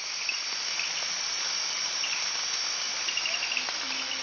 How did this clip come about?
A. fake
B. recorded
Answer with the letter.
B